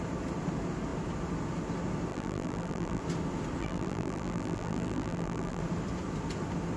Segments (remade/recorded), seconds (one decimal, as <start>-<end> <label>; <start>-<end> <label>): 0.0-2.1 recorded; 2.1-3.0 remade; 3.0-3.6 recorded; 3.6-5.6 remade; 5.6-6.8 recorded